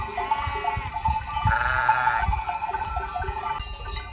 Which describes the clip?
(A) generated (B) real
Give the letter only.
B